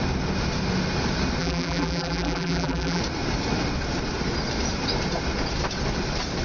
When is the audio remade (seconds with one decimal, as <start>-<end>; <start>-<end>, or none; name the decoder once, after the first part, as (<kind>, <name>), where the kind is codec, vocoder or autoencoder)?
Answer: 1.4-3.0 (vocoder, BigVGAN v2)